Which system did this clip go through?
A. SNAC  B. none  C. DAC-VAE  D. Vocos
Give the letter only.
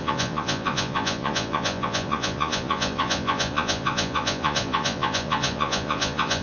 D